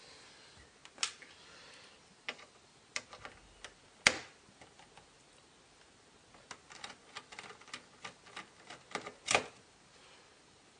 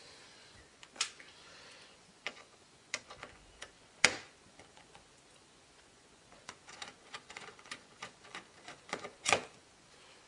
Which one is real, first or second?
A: first